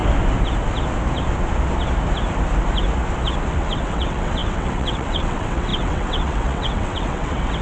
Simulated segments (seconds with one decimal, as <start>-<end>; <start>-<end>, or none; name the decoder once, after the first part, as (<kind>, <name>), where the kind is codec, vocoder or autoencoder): 3.5-7.6 (vocoder, WaveNeXt)